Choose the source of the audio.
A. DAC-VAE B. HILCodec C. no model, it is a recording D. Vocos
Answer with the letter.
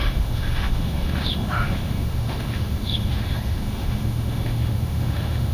A